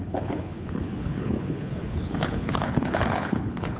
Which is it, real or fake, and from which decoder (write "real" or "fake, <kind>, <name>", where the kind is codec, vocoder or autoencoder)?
fake, codec, HILCodec